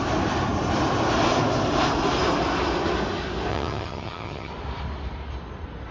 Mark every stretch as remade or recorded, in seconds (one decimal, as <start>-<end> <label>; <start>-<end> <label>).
0.0-3.5 recorded; 3.5-4.5 remade; 4.5-5.9 recorded